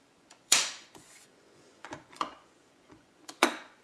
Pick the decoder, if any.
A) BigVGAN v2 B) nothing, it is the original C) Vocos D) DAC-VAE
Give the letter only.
C